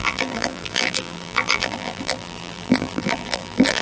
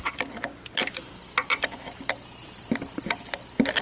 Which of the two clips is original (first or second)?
second